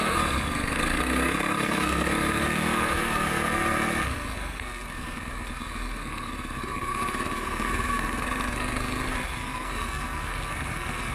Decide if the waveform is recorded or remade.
remade